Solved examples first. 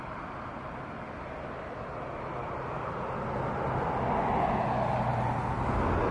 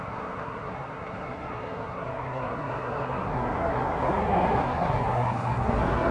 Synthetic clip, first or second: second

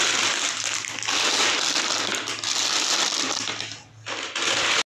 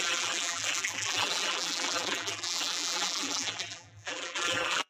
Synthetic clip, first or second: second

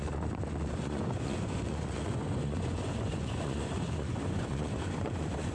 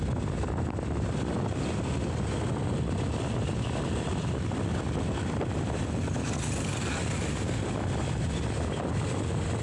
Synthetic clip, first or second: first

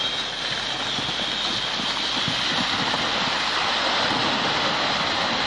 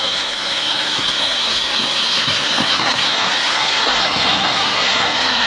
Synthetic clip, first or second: second